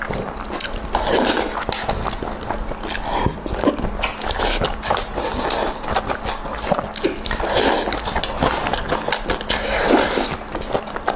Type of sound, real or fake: real